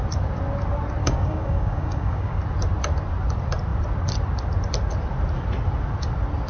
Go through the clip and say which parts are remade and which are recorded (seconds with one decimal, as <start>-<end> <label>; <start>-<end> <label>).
0.0-1.0 recorded; 1.0-2.4 remade; 2.4-6.5 recorded